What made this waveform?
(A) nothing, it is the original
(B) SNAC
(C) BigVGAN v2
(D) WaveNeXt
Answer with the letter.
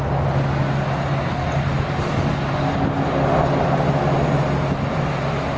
A